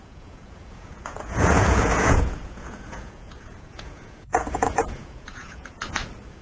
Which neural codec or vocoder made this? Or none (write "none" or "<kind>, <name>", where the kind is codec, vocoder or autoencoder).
vocoder, Vocos